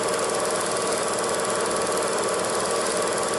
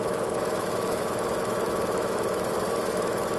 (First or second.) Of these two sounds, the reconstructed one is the second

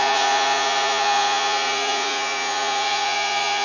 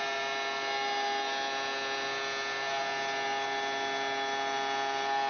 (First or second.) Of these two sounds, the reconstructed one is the first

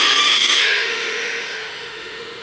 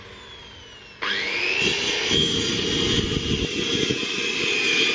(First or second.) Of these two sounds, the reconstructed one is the first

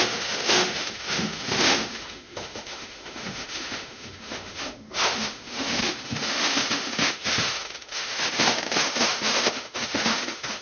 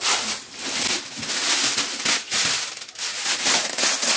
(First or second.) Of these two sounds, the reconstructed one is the first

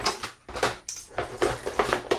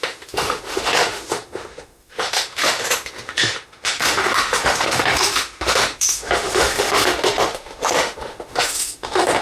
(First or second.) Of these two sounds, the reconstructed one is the second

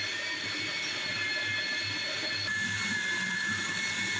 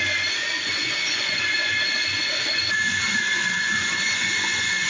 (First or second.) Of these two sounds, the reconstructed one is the second